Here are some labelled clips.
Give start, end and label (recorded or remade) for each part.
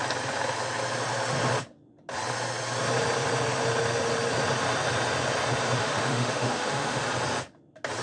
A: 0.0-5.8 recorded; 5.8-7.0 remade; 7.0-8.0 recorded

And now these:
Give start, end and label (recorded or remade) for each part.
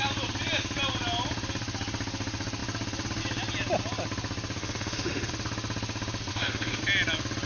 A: 0.0-4.6 recorded; 4.6-5.3 remade; 5.3-6.3 recorded; 6.3-6.8 remade; 6.8-7.5 recorded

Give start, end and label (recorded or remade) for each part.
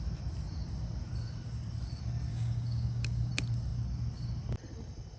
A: 0.0-2.3 recorded; 2.3-3.3 remade; 3.3-5.2 recorded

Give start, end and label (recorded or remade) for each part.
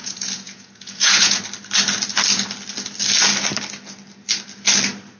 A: 0.0-1.4 remade; 1.4-5.2 recorded